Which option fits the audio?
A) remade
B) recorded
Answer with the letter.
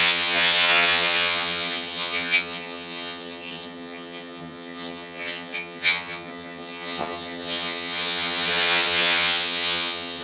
A